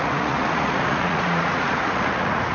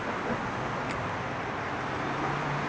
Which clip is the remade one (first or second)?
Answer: first